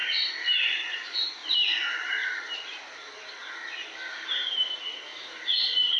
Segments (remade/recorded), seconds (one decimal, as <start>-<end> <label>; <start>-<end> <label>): 0.0-0.7 recorded; 0.7-3.4 remade; 3.4-4.1 recorded; 4.1-5.1 remade; 5.1-6.0 recorded